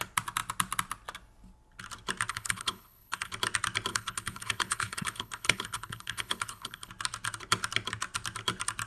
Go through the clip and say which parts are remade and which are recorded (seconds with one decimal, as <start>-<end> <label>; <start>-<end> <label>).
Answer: 0.0-2.3 recorded; 2.3-3.3 remade; 3.3-3.9 recorded; 3.9-6.9 remade; 6.9-8.9 recorded